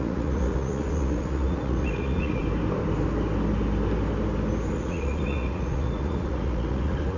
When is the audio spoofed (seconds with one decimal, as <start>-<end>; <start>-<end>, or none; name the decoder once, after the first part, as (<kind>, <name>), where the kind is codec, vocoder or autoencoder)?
0.0-2.4 (vocoder, Vocos); 4.7-7.2